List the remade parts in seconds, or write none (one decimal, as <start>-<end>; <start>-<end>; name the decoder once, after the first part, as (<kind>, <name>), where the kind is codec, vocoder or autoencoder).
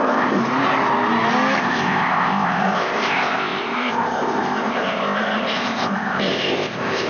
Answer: 0.0-0.4 (codec, ZipCodec); 1.6-7.1